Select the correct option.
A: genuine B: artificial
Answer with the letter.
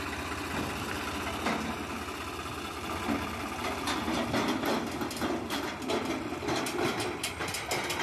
A